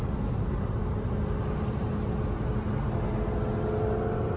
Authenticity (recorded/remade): recorded